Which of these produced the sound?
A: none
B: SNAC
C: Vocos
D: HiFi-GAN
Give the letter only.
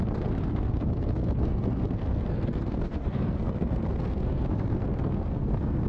B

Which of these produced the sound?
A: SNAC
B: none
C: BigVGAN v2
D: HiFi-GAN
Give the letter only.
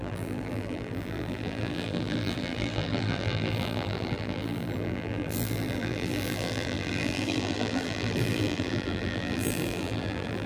C